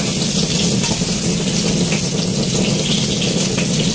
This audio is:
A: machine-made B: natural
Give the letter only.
B